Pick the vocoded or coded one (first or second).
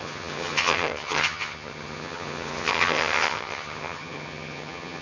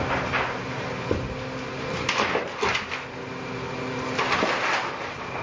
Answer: first